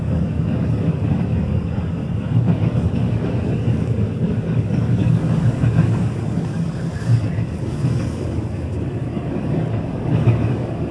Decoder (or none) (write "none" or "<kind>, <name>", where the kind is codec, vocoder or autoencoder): codec, DAC